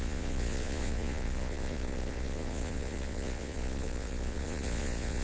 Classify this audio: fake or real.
fake